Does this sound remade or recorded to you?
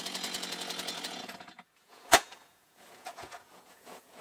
remade